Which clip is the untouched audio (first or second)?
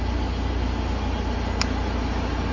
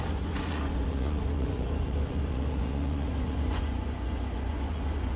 first